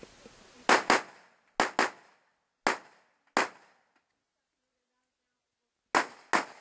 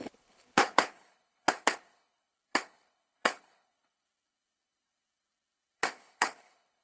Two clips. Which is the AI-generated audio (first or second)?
second